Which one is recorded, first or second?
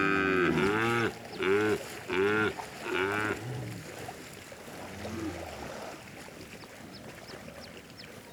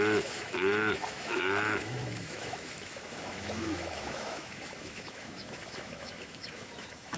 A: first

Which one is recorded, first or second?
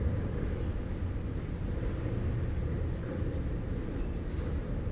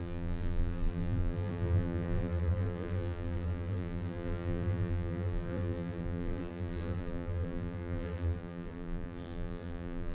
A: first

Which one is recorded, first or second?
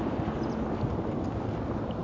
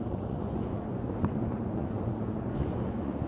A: first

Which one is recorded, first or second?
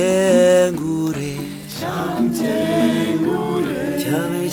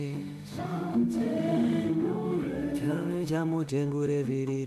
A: first